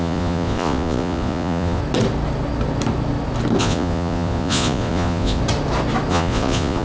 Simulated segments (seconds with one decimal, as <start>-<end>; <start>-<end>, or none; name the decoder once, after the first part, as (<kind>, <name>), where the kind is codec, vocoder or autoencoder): 0.0-1.8 (vocoder, Vocos); 3.6-5.4; 6.1-6.8